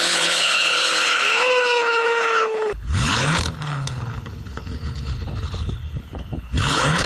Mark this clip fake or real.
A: fake